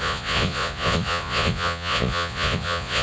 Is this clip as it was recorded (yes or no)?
no